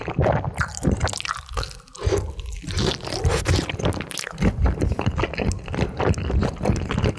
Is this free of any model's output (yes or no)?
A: yes